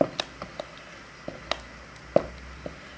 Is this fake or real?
real